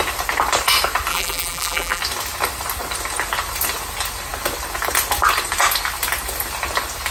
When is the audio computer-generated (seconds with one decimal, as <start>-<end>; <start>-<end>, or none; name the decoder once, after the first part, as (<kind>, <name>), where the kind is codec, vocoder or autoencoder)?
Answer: 1.1-2.0 (vocoder, BigVGAN v2)

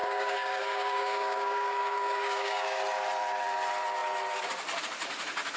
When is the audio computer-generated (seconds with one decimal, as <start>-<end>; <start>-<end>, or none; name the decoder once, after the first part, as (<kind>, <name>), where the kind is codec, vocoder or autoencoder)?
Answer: 0.0-2.8 (codec, DAC)